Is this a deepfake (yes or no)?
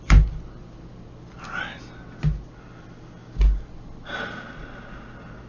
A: no